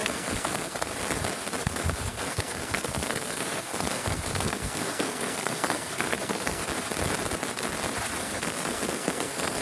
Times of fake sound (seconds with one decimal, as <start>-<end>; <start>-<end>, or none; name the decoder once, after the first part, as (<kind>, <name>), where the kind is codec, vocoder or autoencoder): 0.0-0.9 (codec, SNAC); 1.6-6.6; 8.2-9.6